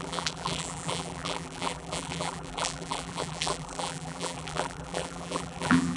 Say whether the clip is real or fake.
fake